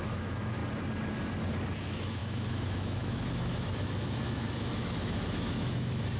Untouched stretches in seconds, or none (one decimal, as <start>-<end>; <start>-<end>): 0.6-1.8